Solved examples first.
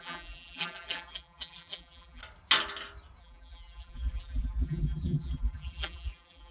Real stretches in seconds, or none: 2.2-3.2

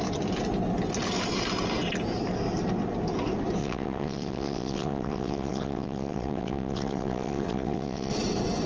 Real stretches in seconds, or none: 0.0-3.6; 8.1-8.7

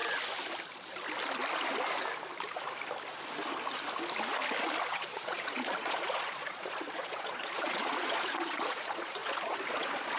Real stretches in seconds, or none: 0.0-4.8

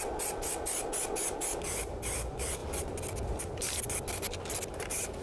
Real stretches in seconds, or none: 0.0-5.2

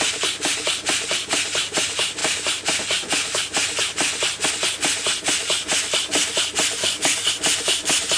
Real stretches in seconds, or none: 0.0-6.8; 7.3-8.2

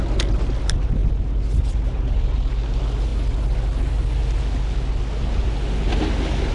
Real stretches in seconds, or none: 0.0-6.5

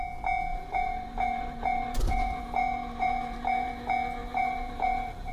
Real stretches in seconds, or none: 0.0-0.5; 3.7-4.2

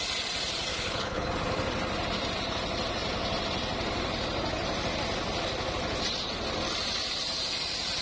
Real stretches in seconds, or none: 0.0-0.7; 1.3-8.0